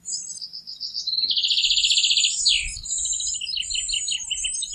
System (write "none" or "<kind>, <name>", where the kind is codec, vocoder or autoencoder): none